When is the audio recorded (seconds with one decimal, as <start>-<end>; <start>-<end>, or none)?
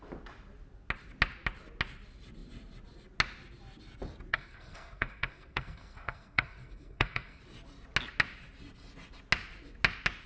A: 0.0-4.3; 7.4-10.3